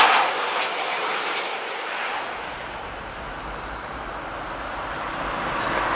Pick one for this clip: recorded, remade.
recorded